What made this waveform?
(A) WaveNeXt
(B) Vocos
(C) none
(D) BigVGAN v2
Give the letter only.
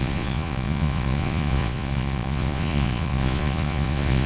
B